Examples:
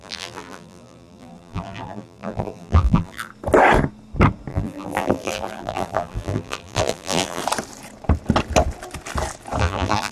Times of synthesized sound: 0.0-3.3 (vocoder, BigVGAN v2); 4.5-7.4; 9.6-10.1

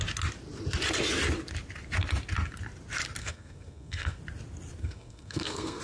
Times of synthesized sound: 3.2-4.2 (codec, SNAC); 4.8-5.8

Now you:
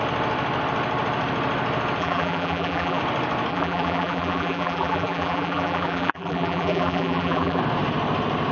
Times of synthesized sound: 2.0-3.0 (vocoder, BigVGAN v2); 3.5-7.6